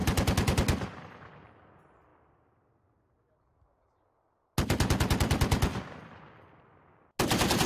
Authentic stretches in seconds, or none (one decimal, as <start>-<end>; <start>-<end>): 0.0-7.7